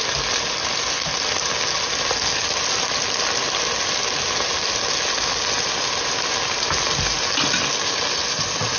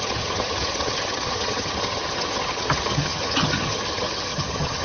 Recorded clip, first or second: first